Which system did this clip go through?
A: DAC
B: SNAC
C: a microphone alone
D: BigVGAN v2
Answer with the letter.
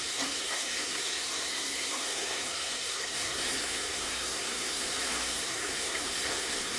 B